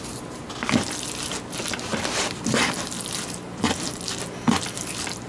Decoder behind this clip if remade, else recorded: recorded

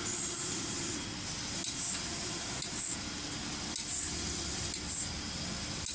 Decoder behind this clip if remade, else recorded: recorded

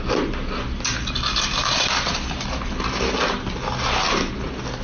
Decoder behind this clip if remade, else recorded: recorded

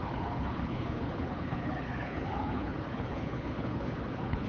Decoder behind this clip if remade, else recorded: remade, codec, HILCodec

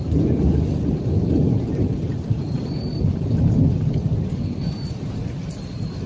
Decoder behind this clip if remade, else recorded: recorded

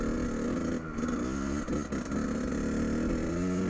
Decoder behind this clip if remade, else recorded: recorded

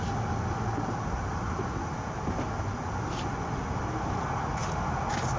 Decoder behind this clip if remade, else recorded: recorded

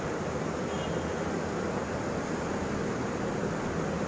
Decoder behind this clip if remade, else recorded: recorded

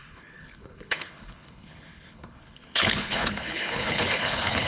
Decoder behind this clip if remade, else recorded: remade, codec, HILCodec